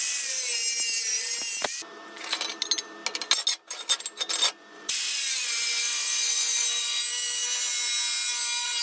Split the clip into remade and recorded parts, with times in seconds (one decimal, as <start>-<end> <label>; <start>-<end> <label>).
0.0-4.6 recorded; 4.6-7.0 remade; 7.0-8.8 recorded